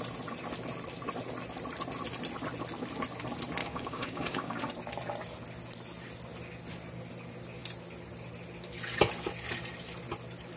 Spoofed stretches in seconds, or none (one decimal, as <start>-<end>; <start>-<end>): 3.6-4.6